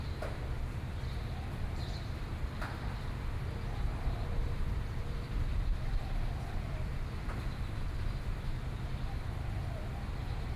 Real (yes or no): no